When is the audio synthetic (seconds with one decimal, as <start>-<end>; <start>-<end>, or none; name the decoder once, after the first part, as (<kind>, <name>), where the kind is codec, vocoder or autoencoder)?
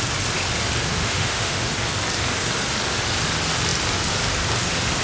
0.9-1.7 (autoencoder, DAC-VAE)